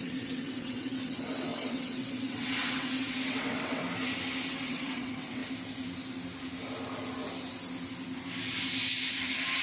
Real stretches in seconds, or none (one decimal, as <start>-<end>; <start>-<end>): 3.8-4.5; 5.4-9.6

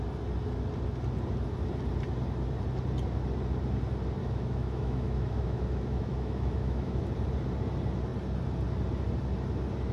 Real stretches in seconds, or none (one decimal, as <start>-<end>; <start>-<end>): 0.0-4.2; 7.0-9.9

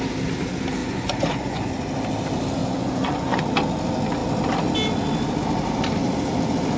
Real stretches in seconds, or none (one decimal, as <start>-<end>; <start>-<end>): 0.0-0.8; 1.7-2.6; 3.4-6.8

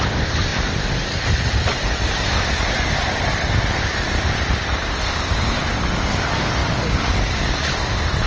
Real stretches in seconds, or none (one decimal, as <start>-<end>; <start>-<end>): 0.0-0.5; 1.7-8.3